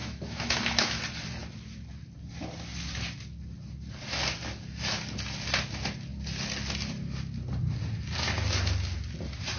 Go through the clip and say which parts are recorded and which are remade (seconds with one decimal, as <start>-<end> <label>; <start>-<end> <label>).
0.0-1.0 remade; 1.0-9.6 recorded